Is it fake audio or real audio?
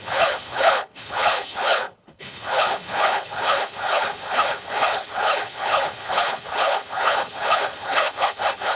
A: fake